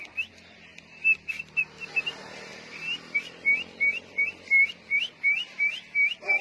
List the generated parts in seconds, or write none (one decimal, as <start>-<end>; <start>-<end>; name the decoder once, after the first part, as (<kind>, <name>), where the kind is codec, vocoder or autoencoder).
none